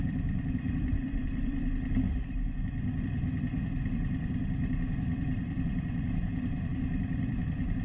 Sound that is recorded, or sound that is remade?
remade